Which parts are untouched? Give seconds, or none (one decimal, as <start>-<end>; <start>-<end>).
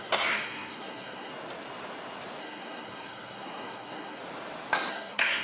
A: 1.3-2.4; 4.2-4.9